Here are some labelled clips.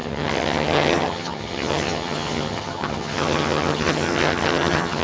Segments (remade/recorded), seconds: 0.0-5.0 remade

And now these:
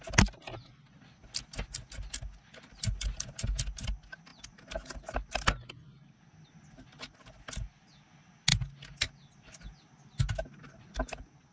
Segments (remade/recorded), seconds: 0.0-11.5 recorded

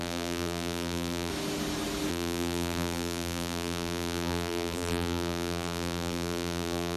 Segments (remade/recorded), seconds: 0.0-1.3 remade; 1.3-2.1 recorded; 2.1-7.0 remade

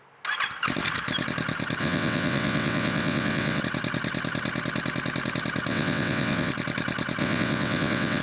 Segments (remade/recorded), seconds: 0.0-1.8 recorded; 1.8-3.6 remade; 3.6-5.7 recorded; 5.7-6.5 remade; 6.5-7.2 recorded; 7.2-8.2 remade

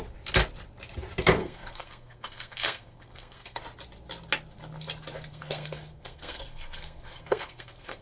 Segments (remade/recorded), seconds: 0.0-1.4 recorded; 1.4-3.6 remade; 3.6-5.3 recorded; 5.3-8.0 remade

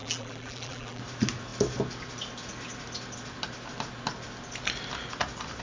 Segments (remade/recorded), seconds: 0.0-1.0 remade; 1.0-5.6 recorded